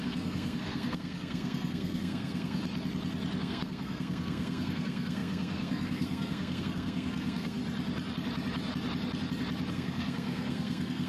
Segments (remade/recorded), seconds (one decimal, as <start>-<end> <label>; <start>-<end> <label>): 0.0-2.6 remade; 2.6-3.4 recorded; 3.4-7.6 remade; 7.6-9.7 recorded; 9.7-11.1 remade